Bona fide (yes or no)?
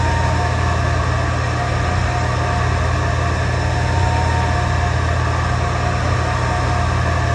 yes